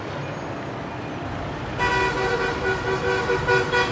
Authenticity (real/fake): real